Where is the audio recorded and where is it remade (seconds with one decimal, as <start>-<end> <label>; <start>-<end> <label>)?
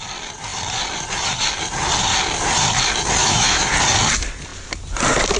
0.0-3.2 recorded; 3.2-3.7 remade; 3.7-5.4 recorded